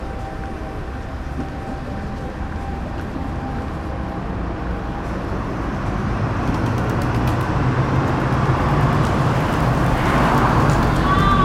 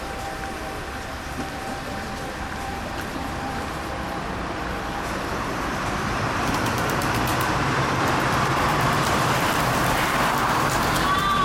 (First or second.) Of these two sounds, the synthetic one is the second